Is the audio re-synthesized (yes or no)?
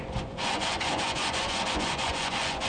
yes